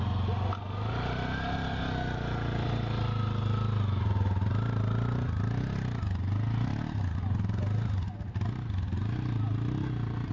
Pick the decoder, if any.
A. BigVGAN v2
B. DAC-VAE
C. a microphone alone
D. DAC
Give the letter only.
C